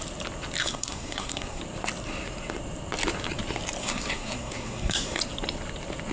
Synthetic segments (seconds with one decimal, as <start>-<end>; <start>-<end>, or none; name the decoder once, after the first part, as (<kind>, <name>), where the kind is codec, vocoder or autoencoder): 0.6-1.6 (codec, SNAC); 3.8-5.2